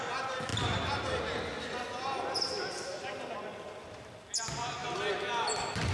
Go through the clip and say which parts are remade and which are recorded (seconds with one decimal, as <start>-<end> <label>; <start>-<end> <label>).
0.0-5.9 recorded